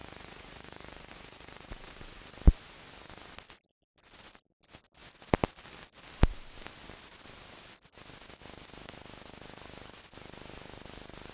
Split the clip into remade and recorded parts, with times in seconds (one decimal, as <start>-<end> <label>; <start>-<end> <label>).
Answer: 0.0-2.2 remade; 2.2-11.3 recorded